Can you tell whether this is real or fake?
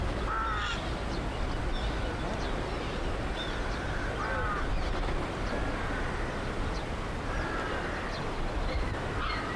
real